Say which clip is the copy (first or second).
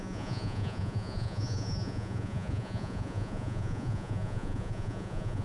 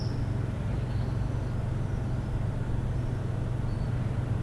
first